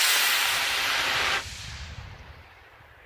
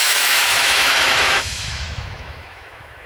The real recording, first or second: first